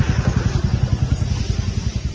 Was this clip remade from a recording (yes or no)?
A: no